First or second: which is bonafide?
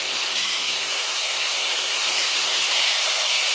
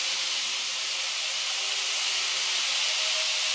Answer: second